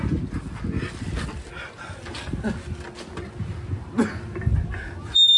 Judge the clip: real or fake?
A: real